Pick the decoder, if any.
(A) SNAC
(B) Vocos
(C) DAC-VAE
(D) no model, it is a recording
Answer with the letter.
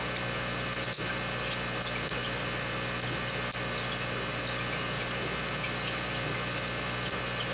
D